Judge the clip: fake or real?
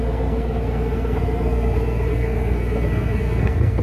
fake